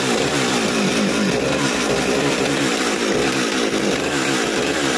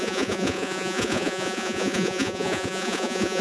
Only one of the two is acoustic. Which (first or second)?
first